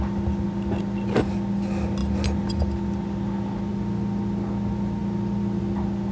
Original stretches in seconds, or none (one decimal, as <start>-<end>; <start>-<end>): 0.0-6.1